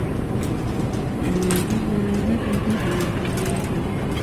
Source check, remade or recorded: recorded